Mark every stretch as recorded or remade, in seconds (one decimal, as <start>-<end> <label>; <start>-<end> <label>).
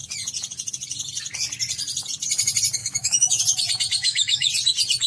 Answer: 0.0-2.8 recorded; 2.8-3.4 remade; 3.4-4.0 recorded; 4.0-4.5 remade; 4.5-5.1 recorded